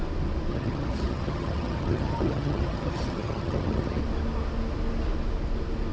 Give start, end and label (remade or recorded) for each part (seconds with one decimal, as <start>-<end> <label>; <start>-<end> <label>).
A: 0.0-0.5 recorded; 0.5-4.0 remade; 4.0-5.9 recorded